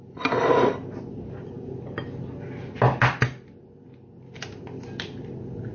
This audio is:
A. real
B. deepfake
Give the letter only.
A